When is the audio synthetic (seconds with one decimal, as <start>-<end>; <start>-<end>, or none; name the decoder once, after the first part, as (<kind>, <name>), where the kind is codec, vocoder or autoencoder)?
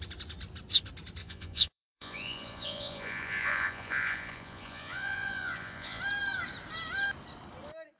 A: 1.2-6.0 (vocoder, Vocos)